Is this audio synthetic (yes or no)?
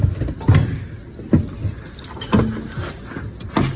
no